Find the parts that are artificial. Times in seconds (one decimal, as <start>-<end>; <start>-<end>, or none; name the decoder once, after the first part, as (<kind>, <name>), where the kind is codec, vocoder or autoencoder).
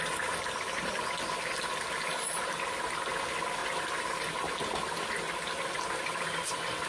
none